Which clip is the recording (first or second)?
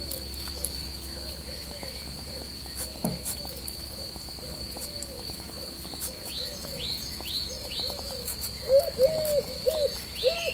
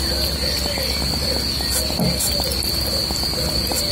second